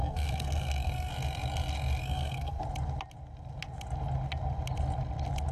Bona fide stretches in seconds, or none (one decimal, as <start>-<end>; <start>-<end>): 1.1-2.0; 2.6-5.5